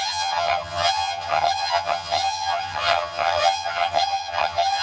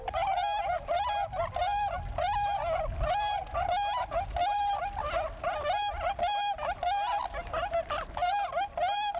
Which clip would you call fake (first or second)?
first